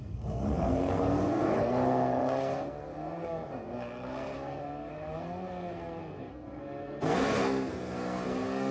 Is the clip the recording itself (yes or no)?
no